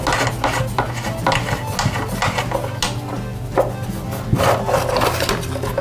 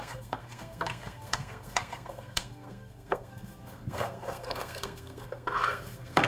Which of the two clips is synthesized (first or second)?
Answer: second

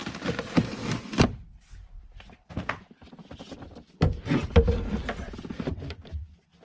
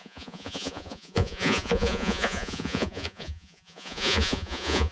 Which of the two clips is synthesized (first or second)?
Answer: second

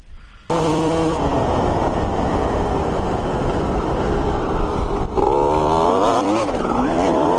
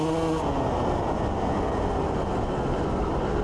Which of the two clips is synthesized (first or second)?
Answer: first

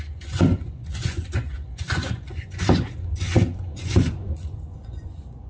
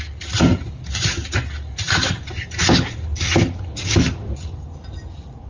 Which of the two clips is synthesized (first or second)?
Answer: first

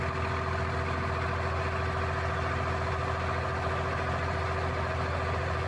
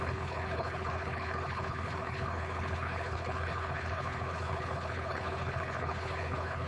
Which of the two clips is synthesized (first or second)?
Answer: second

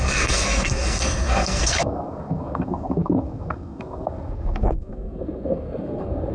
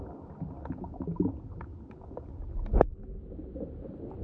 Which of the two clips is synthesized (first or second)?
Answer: first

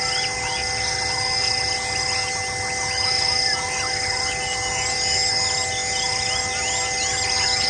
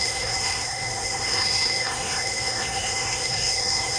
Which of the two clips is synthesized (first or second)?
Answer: second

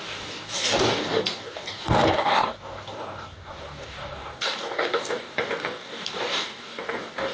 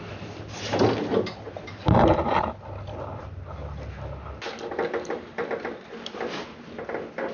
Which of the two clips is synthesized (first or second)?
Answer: first